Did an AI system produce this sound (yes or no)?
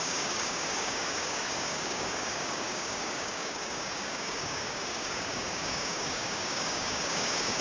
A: yes